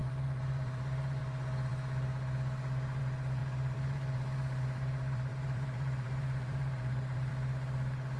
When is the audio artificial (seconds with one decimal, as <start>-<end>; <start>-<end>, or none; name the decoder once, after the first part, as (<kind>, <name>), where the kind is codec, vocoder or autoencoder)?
0.0-1.2 (vocoder, BigVGAN v2); 3.4-7.3